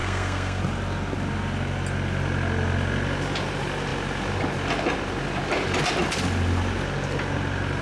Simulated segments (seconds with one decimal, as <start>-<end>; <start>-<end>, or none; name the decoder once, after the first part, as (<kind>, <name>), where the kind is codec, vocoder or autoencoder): 0.0-0.6 (codec, SNAC)